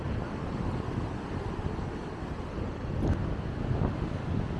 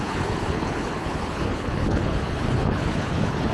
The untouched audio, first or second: first